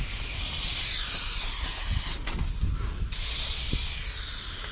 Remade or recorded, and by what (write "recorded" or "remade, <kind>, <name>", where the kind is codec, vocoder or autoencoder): recorded